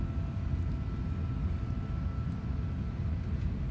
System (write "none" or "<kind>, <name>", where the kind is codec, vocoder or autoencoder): none